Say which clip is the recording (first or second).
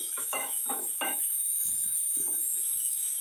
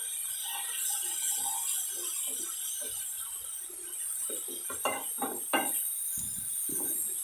second